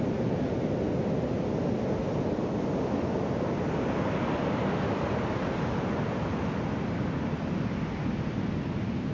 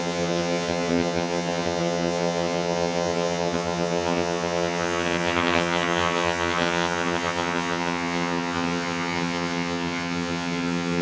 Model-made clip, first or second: second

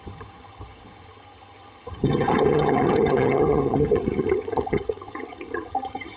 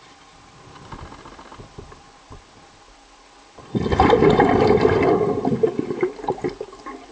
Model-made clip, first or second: first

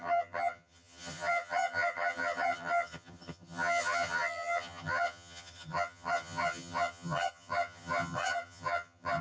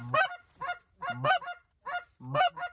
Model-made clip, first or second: first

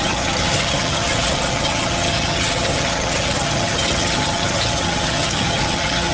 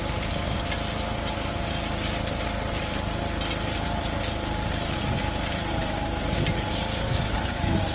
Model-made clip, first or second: first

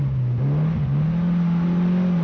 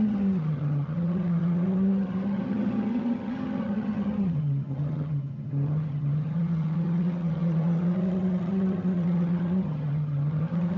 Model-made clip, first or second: second